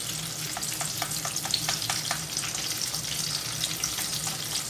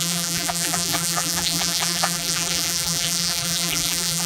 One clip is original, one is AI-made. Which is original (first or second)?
first